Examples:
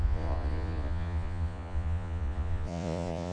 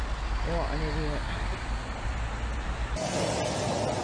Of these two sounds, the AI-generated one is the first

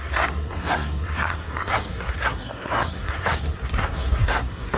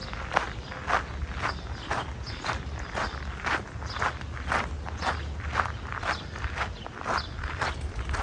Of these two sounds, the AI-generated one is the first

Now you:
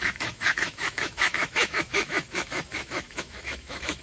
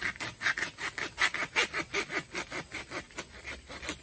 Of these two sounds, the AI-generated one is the first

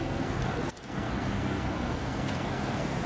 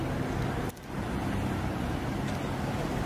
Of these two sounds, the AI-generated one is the first